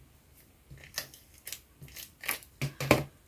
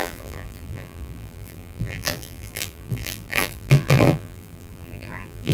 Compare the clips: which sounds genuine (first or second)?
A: first